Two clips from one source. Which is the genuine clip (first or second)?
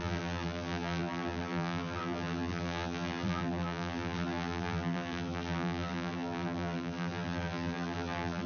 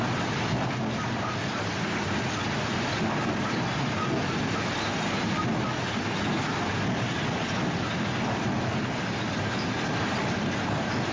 second